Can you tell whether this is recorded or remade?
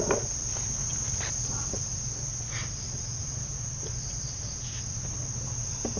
recorded